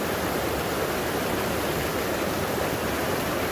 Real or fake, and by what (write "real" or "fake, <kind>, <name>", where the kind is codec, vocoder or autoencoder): real